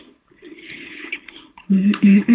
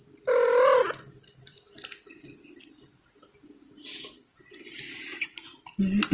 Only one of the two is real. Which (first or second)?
second